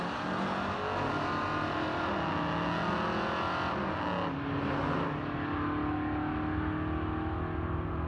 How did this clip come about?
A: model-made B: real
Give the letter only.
B